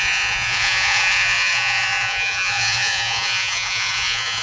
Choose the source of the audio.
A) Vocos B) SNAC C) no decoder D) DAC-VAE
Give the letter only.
A